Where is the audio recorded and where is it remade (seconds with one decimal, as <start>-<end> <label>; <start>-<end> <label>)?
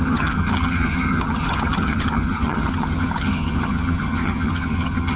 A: 0.0-5.2 remade